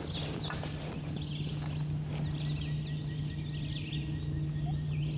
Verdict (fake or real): real